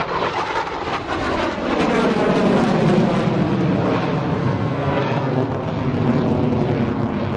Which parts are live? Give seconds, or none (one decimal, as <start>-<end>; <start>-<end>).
0.0-4.4; 5.5-7.4

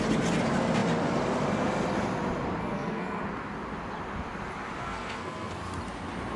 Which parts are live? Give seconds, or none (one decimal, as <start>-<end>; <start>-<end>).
0.0-2.6; 3.2-4.8; 5.5-6.4

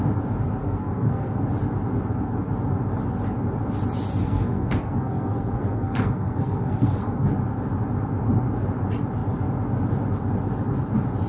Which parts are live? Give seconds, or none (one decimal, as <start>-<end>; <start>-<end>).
0.0-0.6; 1.4-4.2; 7.3-11.3

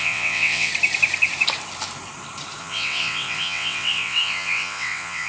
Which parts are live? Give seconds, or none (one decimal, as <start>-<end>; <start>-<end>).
0.7-2.6

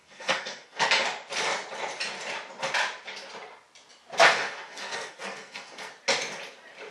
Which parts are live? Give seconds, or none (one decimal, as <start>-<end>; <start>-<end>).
0.9-4.3; 5.9-6.9

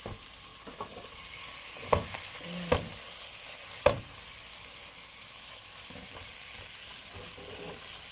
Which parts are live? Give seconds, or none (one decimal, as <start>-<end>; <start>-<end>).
0.0-8.1